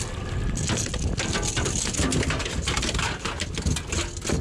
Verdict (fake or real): real